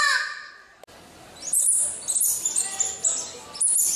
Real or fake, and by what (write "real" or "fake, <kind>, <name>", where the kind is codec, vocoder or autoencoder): real